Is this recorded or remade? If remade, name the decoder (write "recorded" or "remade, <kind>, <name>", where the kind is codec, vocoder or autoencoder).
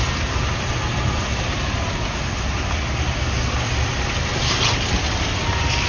recorded